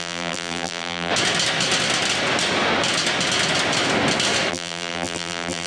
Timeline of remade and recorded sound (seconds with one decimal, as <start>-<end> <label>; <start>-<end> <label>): 0.0-1.1 remade; 1.1-4.5 recorded; 4.5-5.7 remade